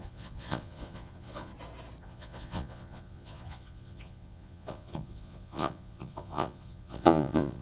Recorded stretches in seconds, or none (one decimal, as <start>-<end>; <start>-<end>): 1.5-2.0